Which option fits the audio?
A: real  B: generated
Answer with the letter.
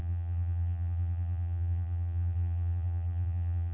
B